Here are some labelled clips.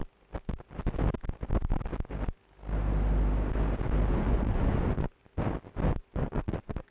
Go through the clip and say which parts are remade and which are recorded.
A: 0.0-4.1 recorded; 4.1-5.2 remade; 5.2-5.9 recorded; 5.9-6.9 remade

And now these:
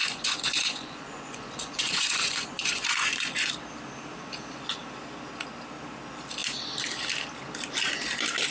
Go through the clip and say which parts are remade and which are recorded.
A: 0.0-3.5 remade; 3.5-8.5 recorded

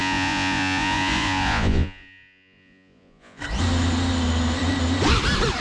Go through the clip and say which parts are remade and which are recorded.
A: 0.0-3.4 remade; 3.4-5.6 recorded

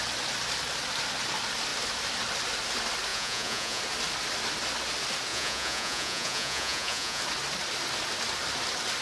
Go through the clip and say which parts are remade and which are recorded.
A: 0.0-3.1 recorded; 3.1-3.8 remade; 3.8-5.3 recorded; 5.3-7.2 remade; 7.2-9.0 recorded

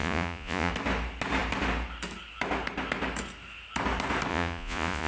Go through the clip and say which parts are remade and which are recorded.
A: 0.0-0.7 remade; 0.7-4.3 recorded; 4.3-5.1 remade

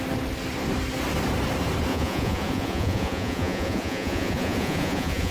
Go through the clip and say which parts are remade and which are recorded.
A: 0.0-1.9 recorded; 1.9-5.3 remade